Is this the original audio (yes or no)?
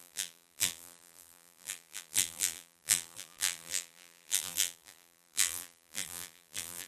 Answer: no